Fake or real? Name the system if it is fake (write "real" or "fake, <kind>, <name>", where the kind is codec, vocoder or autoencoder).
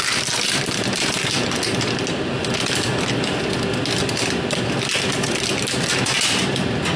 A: real